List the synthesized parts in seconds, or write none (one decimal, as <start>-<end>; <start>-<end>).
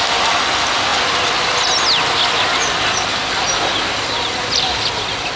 none